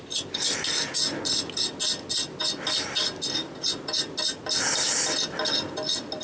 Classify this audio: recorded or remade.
recorded